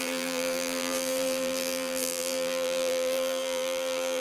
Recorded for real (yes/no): no